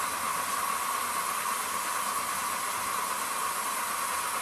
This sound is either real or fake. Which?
real